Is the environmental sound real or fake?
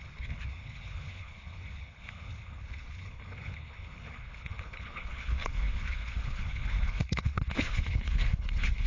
fake